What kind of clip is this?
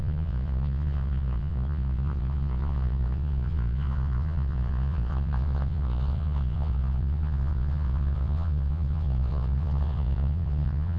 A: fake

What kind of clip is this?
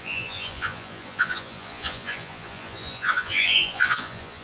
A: fake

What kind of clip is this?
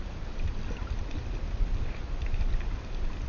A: real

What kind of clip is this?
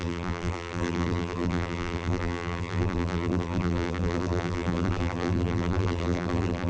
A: fake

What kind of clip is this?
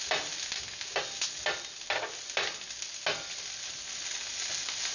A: real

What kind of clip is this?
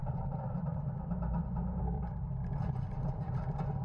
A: fake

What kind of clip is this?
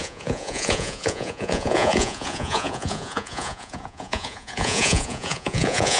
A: fake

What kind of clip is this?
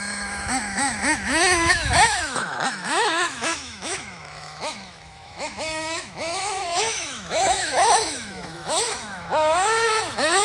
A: fake